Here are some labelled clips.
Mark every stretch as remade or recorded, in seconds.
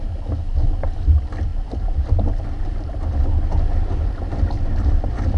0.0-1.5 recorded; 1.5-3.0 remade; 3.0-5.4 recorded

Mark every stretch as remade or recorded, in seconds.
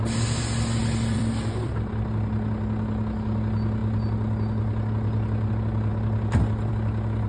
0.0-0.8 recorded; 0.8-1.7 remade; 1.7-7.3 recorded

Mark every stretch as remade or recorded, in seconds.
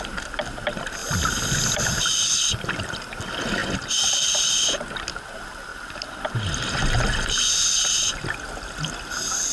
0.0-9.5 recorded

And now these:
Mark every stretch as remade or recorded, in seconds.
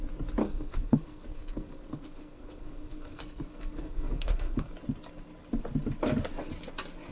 0.0-0.4 recorded; 0.4-4.7 remade; 4.7-7.1 recorded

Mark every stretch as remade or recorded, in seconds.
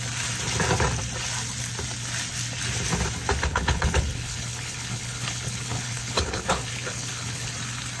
0.0-3.5 recorded; 3.5-7.5 remade; 7.5-8.0 recorded